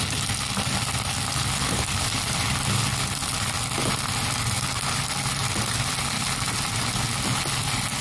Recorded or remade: recorded